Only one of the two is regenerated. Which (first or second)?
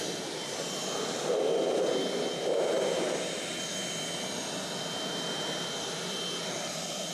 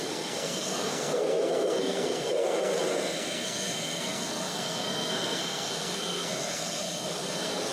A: second